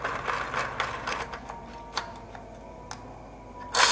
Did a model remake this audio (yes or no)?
no